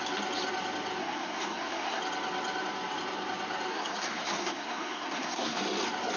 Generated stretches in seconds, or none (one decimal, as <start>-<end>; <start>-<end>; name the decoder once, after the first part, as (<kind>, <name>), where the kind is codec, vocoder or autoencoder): 1.0-2.0 (codec, SNAC); 3.7-5.6